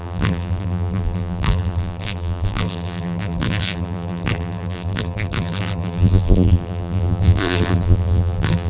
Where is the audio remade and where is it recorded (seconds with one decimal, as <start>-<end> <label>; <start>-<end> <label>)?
0.0-8.7 remade